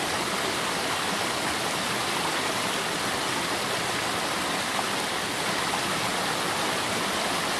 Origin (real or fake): real